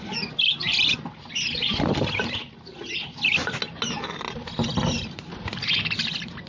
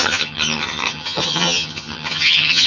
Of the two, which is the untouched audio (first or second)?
first